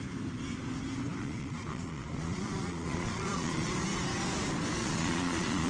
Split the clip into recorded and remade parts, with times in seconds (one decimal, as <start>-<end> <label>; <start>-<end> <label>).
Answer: 0.0-1.2 recorded; 1.2-3.7 remade; 3.7-4.8 recorded; 4.8-5.7 remade